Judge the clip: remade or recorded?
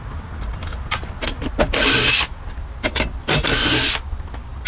recorded